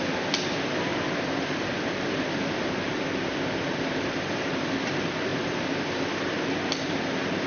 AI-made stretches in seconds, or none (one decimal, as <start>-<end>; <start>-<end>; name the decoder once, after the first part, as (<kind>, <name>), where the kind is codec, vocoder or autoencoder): 0.9-2.9 (vocoder, BigVGAN v2); 5.3-5.9